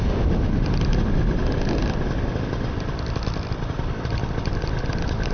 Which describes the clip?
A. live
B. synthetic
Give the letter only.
A